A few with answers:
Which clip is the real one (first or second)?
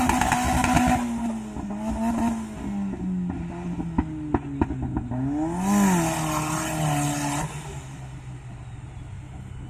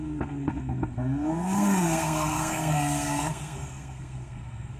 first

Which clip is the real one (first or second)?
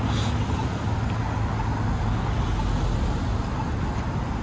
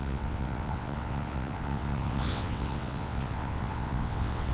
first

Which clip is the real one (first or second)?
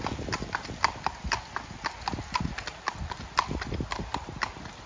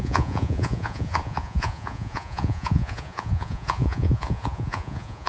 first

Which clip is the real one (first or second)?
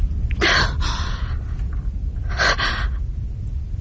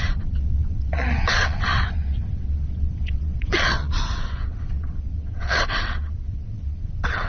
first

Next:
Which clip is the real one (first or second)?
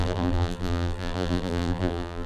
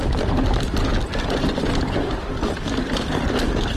second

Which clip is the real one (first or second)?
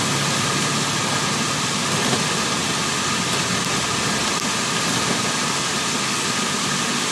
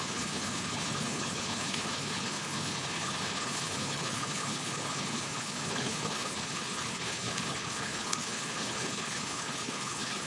first